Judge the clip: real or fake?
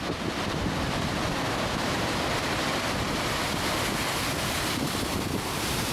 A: real